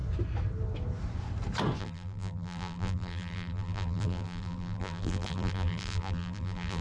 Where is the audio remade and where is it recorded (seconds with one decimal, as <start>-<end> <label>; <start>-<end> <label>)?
0.0-1.8 recorded; 1.8-6.8 remade